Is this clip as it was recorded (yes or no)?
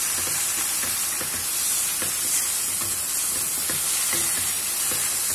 yes